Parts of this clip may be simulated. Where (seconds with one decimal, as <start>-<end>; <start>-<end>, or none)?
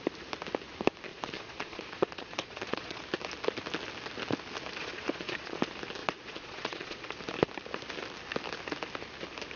1.1-3.0; 4.8-5.6; 6.0-7.0